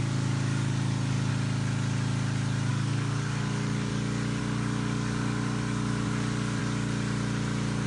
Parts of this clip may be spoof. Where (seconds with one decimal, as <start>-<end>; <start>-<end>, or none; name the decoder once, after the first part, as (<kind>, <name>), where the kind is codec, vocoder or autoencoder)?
0.0-1.3 (codec, DAC); 2.7-3.9; 4.4-6.6